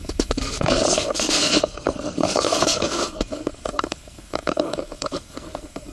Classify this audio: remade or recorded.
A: remade